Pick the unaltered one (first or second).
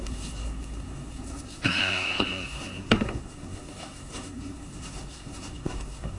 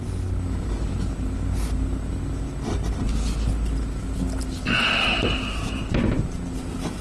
second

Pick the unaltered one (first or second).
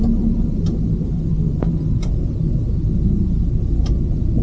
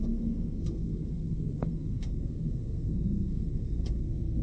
first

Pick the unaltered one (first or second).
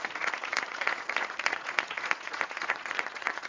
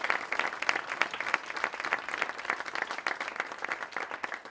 second